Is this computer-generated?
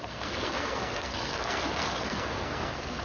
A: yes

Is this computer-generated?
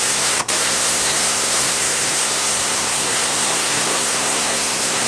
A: yes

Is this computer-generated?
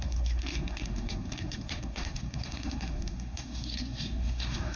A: yes